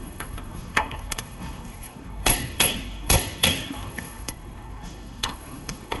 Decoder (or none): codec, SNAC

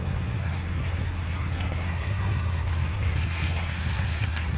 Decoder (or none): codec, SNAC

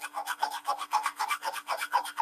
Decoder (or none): codec, SNAC